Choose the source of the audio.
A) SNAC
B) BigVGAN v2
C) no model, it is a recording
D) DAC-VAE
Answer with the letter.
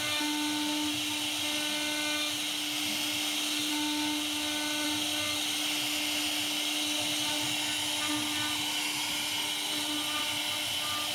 C